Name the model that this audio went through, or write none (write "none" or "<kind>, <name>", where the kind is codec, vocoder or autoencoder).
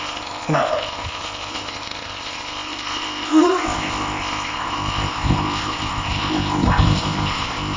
codec, ZipCodec